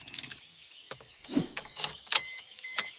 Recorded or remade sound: remade